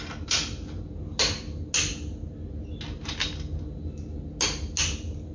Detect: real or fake real